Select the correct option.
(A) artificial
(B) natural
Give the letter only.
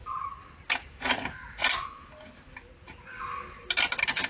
B